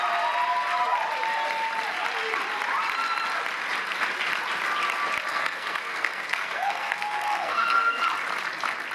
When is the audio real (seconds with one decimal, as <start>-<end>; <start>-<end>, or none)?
0.0-5.3; 8.0-8.9